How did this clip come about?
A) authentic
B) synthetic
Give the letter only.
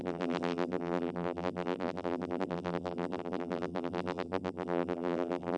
B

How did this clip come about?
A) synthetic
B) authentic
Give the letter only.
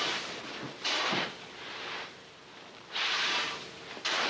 A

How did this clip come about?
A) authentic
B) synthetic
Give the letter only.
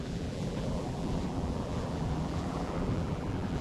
B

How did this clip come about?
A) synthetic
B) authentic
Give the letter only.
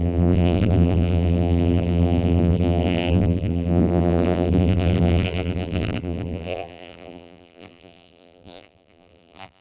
A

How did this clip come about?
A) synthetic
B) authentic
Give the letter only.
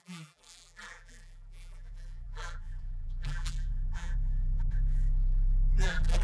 A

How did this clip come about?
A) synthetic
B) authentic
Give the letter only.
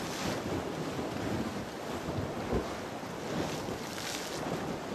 B